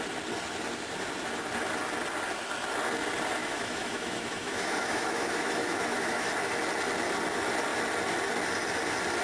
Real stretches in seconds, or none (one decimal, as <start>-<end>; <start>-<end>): 0.0-3.4; 6.3-9.2